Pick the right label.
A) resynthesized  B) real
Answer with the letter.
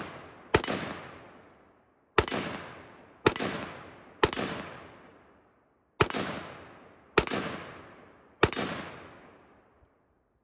B